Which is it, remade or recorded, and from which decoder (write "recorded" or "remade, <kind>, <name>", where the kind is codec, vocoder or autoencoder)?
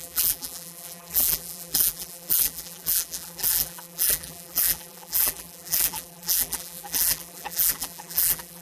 remade, vocoder, BigVGAN v2